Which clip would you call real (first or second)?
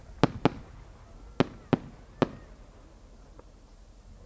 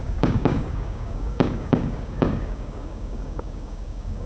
first